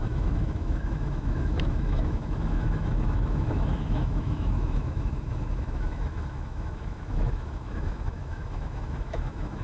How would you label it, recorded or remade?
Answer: remade